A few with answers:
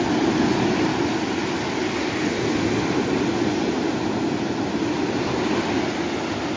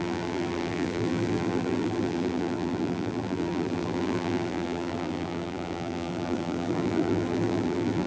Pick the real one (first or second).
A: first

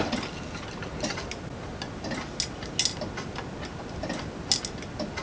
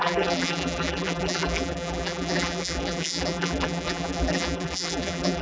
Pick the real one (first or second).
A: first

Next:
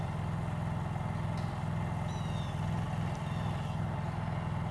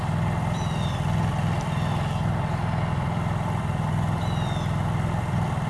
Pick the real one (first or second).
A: first